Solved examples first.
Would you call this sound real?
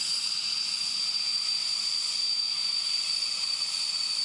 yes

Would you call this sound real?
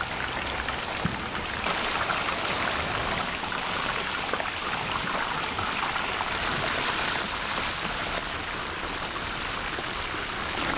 no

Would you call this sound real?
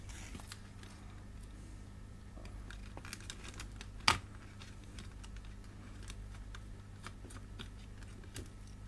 yes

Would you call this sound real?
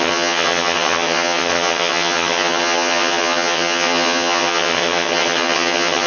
no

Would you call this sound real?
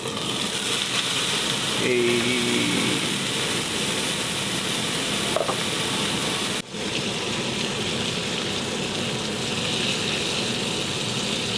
yes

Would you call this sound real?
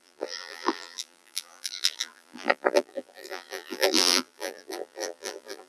no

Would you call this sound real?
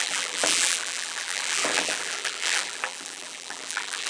no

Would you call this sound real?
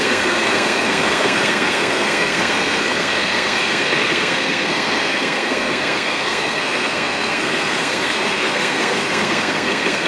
no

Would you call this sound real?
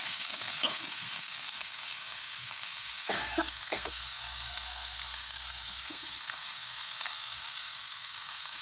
no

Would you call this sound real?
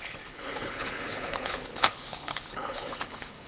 no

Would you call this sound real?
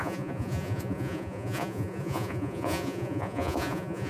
no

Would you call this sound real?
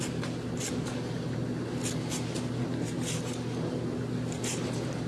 yes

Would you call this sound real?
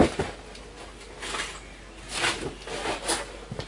yes